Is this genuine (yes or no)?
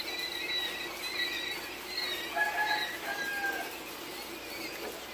yes